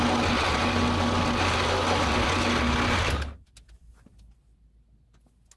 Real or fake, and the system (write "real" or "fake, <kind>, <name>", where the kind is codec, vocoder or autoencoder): real